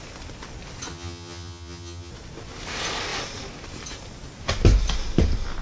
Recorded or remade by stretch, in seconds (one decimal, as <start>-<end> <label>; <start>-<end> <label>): 0.0-0.9 recorded; 0.9-2.1 remade; 2.1-5.6 recorded